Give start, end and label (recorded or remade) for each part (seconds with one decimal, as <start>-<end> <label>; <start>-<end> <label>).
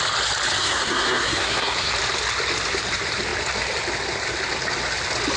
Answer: 0.0-0.6 recorded; 0.6-1.9 remade; 1.9-5.4 recorded